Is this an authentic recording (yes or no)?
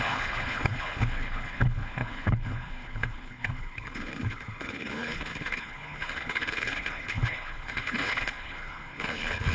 no